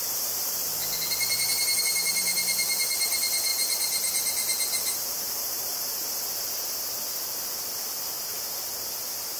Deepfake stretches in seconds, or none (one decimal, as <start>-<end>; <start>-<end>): 0.0-0.8; 1.8-5.8; 9.0-9.4